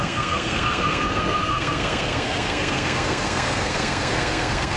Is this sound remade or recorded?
remade